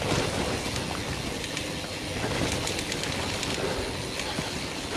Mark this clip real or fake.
real